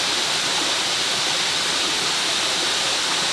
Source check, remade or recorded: recorded